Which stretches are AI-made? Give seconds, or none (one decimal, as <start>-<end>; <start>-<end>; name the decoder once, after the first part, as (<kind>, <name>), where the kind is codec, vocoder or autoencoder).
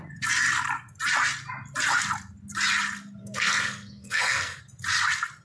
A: 3.2-4.6 (codec, SNAC)